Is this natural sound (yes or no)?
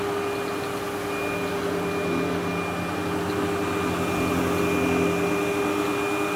yes